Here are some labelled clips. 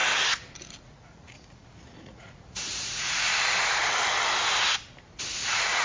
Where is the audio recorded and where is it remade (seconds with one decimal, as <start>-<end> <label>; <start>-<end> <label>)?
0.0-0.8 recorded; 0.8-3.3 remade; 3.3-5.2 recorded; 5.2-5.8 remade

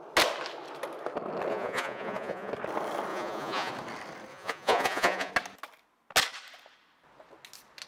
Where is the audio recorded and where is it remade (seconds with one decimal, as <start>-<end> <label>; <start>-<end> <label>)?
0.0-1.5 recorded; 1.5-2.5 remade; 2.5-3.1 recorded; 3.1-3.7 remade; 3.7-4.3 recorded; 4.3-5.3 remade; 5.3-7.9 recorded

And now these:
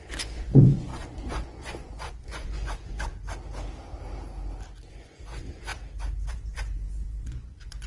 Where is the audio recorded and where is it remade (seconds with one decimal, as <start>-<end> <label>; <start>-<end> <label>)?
0.0-3.1 remade; 3.1-4.9 recorded; 4.9-5.7 remade; 5.7-6.3 recorded; 6.3-7.9 remade

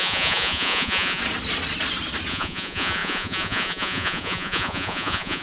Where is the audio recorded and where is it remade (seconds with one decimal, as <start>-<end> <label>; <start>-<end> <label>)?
0.0-1.2 remade; 1.2-2.3 recorded; 2.3-5.4 remade